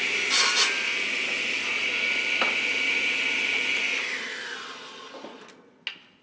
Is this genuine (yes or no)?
yes